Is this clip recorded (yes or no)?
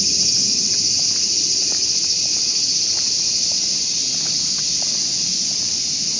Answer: yes